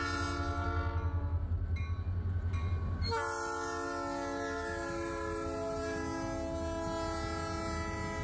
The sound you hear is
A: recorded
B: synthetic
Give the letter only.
A